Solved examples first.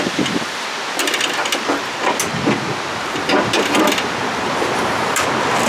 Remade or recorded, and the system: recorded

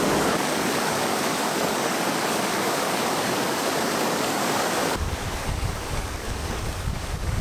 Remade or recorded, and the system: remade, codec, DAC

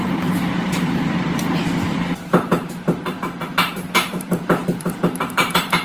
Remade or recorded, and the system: remade, vocoder, BigVGAN v2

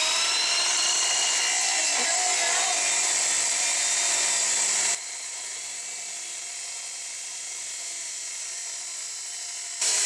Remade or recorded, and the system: recorded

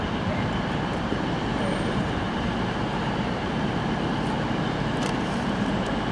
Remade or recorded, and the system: remade, vocoder, BigVGAN v2